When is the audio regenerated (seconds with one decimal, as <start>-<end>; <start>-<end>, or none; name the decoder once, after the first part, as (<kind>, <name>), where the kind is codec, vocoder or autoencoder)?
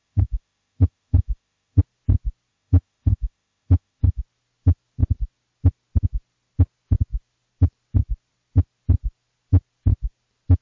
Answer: 0.0-1.8 (autoencoder, DAC-VAE); 2.5-4.2